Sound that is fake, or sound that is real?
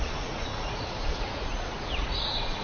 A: fake